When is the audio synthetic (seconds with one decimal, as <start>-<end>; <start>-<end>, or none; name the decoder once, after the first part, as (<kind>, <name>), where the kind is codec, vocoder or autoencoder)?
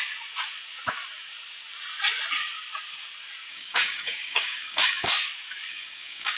3.5-5.1 (codec, DAC); 5.7-6.4